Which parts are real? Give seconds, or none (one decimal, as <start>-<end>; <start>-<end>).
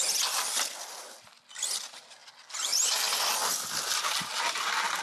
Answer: 0.0-5.0